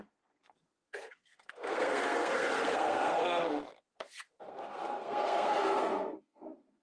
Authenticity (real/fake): fake